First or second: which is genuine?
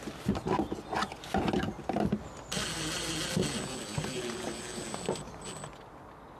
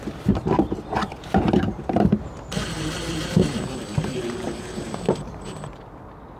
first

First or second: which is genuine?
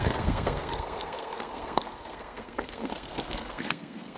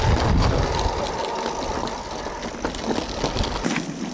second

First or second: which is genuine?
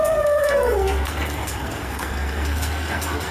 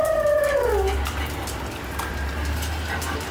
second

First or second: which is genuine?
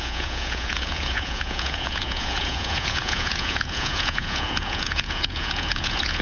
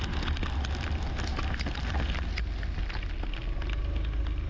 second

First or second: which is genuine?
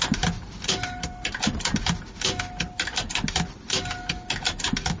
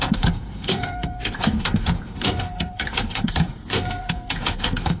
first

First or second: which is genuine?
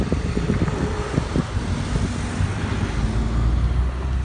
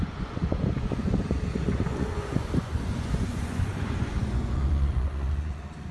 first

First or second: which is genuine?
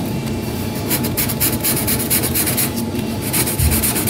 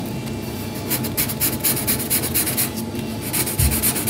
second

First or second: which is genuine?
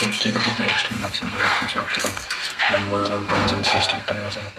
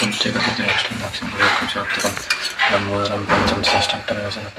second